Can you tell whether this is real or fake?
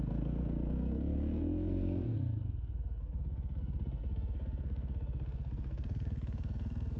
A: fake